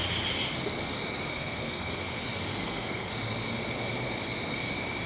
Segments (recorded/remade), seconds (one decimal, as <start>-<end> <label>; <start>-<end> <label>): 0.0-1.3 recorded; 1.3-2.0 remade; 2.0-2.5 recorded; 2.5-3.1 remade; 3.1-5.1 recorded